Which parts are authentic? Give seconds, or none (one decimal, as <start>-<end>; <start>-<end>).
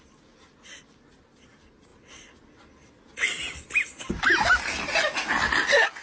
0.0-6.0